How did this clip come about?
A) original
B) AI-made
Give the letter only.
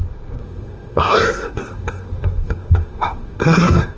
B